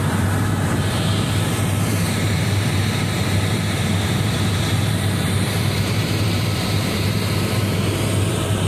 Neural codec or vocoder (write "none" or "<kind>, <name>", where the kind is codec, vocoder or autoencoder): vocoder, BigVGAN v2